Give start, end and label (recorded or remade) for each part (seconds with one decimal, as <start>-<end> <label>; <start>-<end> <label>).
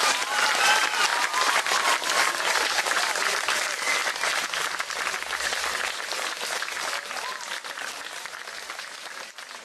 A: 0.0-9.6 recorded